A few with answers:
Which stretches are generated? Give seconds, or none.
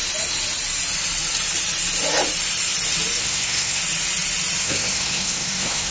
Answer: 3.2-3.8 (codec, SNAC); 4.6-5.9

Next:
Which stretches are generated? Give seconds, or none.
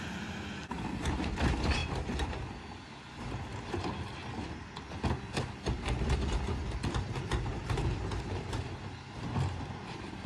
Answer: 1.8-2.4 (vocoder, BigVGAN v2); 7.5-8.0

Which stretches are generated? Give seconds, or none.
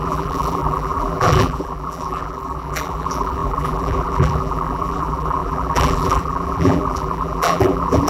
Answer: 0.0-8.1 (vocoder, BigVGAN v2)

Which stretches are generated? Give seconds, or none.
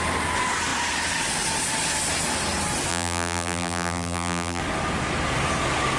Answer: 2.9-4.6 (vocoder, BigVGAN v2)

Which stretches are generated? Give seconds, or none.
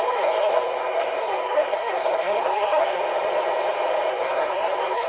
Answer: 0.0-3.0 (codec, SNAC); 4.1-5.1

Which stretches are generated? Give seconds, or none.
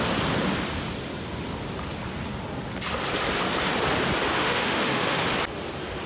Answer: 4.3-5.3 (autoencoder, DAC-VAE)